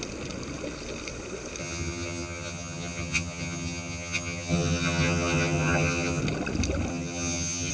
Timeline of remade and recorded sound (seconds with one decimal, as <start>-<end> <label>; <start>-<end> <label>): 0.0-1.6 recorded; 1.6-6.2 remade; 6.2-6.9 recorded; 6.9-7.7 remade